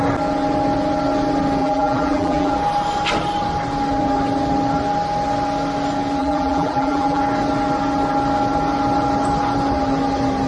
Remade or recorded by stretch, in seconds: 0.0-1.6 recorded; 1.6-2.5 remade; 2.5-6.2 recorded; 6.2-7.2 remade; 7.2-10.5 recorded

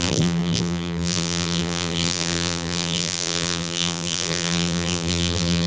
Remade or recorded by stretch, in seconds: 0.0-5.7 remade